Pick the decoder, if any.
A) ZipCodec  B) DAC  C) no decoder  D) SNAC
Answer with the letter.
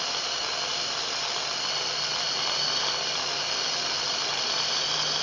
C